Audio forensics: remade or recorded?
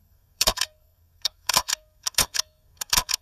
remade